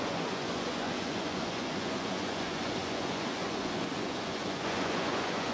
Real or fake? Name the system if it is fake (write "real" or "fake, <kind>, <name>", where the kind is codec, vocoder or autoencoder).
fake, vocoder, Vocos